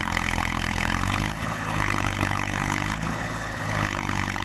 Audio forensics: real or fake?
fake